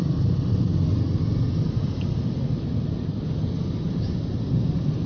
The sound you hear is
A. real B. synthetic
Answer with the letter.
A